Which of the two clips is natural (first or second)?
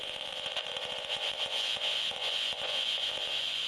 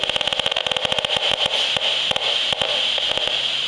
second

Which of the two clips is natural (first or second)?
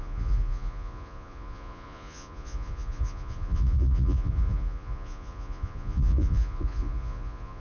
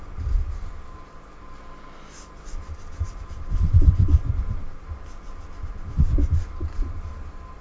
second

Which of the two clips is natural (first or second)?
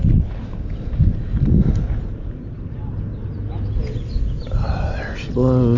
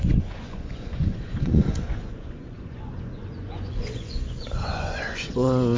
first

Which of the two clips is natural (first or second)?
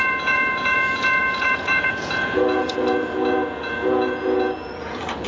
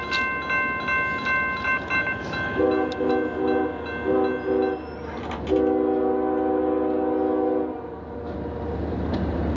second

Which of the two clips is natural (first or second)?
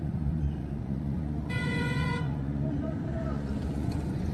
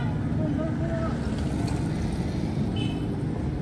second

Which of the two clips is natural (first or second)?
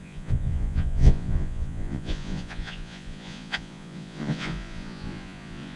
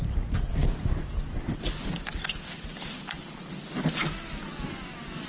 second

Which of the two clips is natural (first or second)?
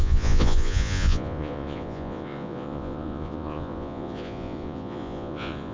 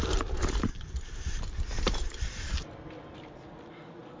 second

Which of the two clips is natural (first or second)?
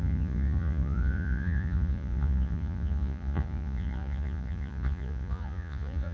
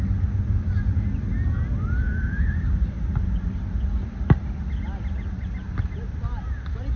second